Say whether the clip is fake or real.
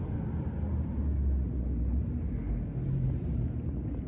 real